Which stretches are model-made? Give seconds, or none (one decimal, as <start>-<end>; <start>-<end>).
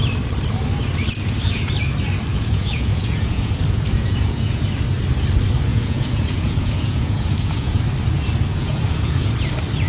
2.3-4.6; 5.7-7.8; 8.5-9.3